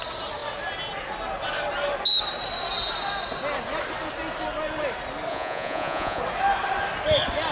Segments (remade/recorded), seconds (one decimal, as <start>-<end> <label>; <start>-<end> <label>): 0.0-5.3 recorded; 5.3-6.2 remade; 6.2-7.5 recorded